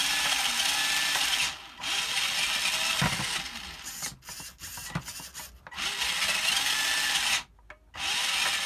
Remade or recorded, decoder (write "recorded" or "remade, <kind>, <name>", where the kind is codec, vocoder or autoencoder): recorded